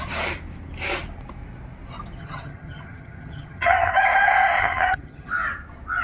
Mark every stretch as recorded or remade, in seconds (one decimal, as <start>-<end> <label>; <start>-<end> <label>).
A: 0.0-2.2 recorded; 2.2-3.9 remade; 3.9-4.6 recorded; 4.6-5.3 remade; 5.3-6.0 recorded